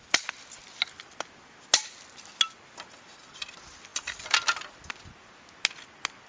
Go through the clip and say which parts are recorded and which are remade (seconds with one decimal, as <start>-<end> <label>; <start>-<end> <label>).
0.0-6.3 recorded